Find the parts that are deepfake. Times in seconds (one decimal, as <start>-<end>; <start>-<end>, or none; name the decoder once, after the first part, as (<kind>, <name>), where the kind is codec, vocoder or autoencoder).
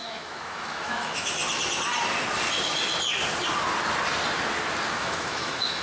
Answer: 0.0-1.4 (autoencoder, DAC-VAE); 4.9-5.8